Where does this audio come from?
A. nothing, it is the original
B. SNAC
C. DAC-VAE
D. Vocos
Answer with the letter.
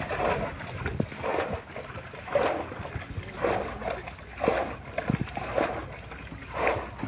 A